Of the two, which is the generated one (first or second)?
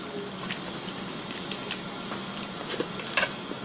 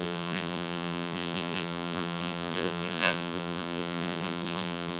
second